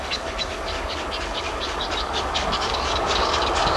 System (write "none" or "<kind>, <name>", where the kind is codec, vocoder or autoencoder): codec, DAC